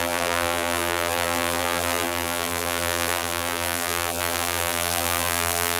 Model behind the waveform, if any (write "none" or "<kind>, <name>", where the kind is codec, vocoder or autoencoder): vocoder, BigVGAN v2